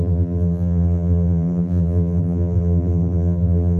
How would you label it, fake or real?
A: fake